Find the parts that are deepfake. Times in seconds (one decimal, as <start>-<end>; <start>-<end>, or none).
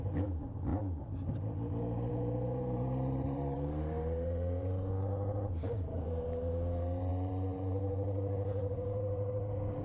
0.0-0.7; 2.1-9.8